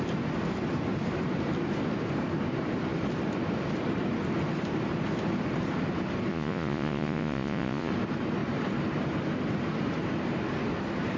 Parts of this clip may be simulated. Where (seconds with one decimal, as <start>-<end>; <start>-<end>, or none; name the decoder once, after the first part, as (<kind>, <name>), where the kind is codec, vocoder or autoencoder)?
6.3-7.9 (vocoder, Vocos)

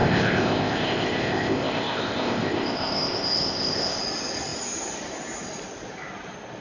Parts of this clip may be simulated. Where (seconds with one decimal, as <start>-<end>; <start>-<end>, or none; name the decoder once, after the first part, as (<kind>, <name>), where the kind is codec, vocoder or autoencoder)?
0.0-4.0 (codec, ZipCodec)

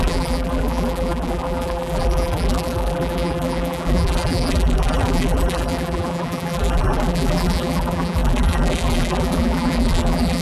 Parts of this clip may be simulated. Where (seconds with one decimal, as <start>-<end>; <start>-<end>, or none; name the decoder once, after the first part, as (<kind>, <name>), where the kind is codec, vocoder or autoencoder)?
0.0-10.4 (vocoder, BigVGAN v2)

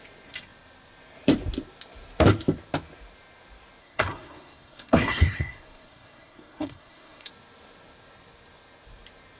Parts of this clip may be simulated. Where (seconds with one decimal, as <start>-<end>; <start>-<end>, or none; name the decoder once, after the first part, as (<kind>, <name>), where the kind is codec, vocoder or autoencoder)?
3.8-7.3 (codec, SNAC)

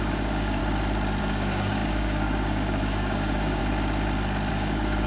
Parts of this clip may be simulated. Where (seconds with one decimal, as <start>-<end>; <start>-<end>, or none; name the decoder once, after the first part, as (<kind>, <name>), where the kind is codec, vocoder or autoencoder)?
0.0-0.6 (codec, DAC); 1.2-3.6; 4.5-5.1

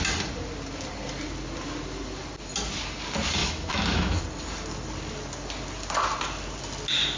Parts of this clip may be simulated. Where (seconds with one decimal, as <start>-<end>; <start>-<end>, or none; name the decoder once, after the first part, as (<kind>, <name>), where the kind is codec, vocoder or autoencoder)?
3.4-4.2 (autoencoder, DAC-VAE)